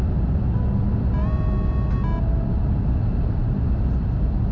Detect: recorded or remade recorded